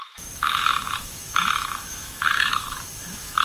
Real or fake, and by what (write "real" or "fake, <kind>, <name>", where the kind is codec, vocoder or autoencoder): fake, autoencoder, DAC-VAE